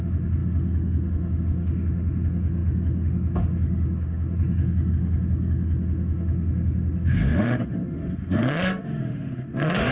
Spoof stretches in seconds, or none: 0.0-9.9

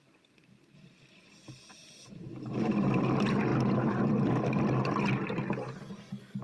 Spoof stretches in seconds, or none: 1.8-2.7; 3.5-4.1